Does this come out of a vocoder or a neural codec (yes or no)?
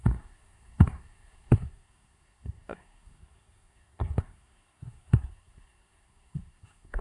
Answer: yes